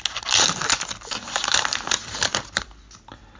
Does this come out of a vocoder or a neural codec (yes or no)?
no